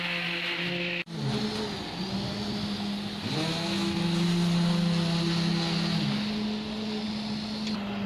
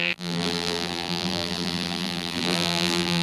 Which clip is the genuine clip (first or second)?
first